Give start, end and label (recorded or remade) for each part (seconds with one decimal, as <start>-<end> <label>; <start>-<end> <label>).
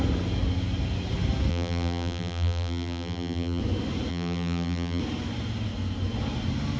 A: 0.0-1.5 recorded; 1.5-3.6 remade; 3.6-4.1 recorded; 4.1-5.0 remade; 5.0-6.8 recorded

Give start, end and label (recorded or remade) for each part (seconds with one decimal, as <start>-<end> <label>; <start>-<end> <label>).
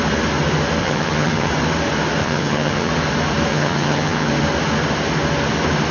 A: 0.0-0.8 recorded; 0.8-1.5 remade; 1.5-2.2 recorded; 2.2-2.9 remade; 2.9-3.5 recorded; 3.5-4.3 remade; 4.3-5.9 recorded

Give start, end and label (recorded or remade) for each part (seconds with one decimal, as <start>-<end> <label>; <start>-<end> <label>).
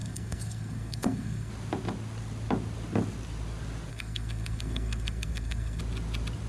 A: 0.0-1.5 remade; 1.5-3.9 recorded; 3.9-5.8 remade; 5.8-6.5 recorded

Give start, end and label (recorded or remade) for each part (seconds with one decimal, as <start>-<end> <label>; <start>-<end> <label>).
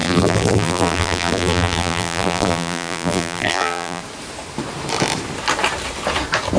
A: 0.0-4.0 remade; 4.0-6.6 recorded